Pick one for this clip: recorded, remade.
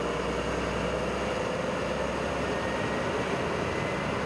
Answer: recorded